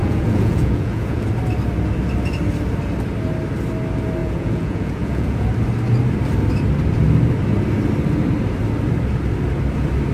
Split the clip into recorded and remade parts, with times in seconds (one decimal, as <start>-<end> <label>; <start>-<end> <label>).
0.0-1.3 remade; 1.3-4.2 recorded; 4.2-5.5 remade; 5.5-10.1 recorded